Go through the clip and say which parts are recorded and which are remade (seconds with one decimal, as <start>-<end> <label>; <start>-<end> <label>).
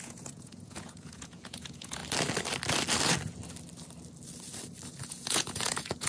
0.0-2.0 remade; 2.0-5.1 recorded; 5.1-6.1 remade